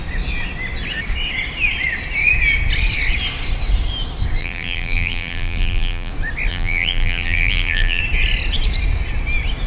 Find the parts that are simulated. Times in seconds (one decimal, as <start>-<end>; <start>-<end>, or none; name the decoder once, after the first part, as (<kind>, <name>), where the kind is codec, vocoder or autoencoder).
4.4-6.1 (vocoder, BigVGAN v2); 6.5-8.0